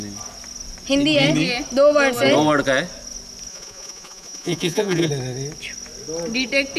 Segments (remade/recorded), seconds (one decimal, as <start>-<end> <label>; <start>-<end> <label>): 0.0-3.5 recorded; 3.5-5.1 remade; 5.1-6.8 recorded